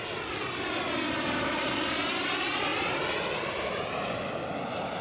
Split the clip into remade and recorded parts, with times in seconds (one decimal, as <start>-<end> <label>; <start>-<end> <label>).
0.0-5.0 recorded